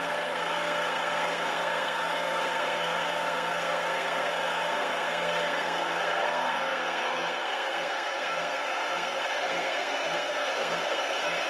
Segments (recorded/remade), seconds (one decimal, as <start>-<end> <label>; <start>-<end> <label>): 0.0-11.5 remade